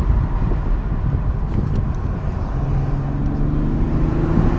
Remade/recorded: recorded